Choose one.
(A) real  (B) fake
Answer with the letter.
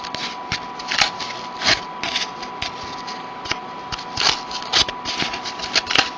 A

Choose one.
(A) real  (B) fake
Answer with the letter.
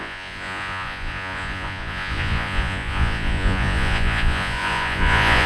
B